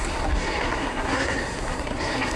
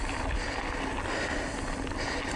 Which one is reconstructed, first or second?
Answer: first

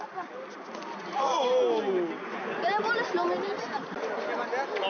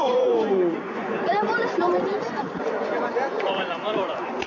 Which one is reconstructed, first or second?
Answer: second